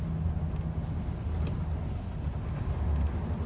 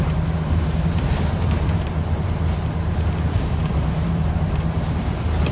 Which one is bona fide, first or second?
first